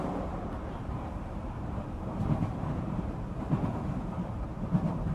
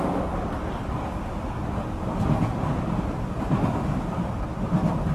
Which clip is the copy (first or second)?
first